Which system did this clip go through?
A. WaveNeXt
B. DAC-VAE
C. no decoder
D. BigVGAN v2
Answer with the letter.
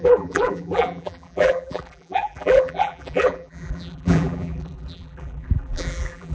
D